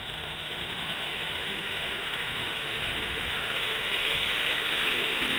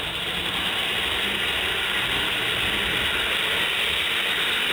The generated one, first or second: first